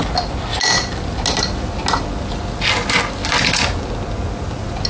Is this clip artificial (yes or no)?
no